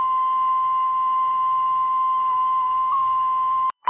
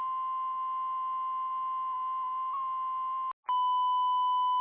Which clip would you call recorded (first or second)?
second